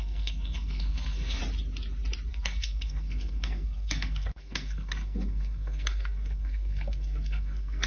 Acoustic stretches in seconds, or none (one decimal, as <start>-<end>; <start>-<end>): 1.4-2.3